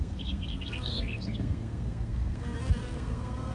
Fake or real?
fake